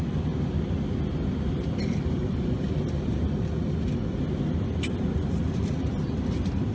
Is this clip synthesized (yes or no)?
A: no